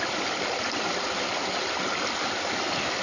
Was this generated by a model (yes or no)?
no